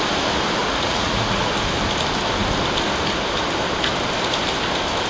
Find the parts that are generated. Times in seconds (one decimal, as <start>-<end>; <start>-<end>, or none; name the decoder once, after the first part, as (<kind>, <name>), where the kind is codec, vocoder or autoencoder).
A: 0.6-1.5 (vocoder, Vocos)